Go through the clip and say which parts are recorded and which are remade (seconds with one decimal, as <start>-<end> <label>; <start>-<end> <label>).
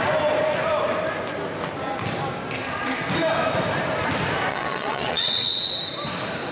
0.0-4.5 recorded; 4.5-5.7 remade; 5.7-6.5 recorded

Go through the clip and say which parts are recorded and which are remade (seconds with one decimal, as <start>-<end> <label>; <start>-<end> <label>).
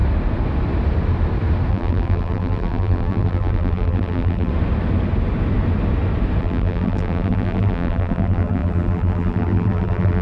0.0-1.7 recorded; 1.7-4.5 remade; 4.5-6.4 recorded; 6.4-10.2 remade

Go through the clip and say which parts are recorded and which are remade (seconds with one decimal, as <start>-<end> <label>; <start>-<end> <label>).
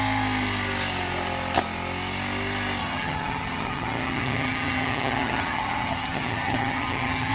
0.0-2.8 recorded; 2.8-7.3 remade